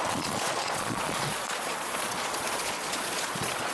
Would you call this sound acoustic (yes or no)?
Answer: no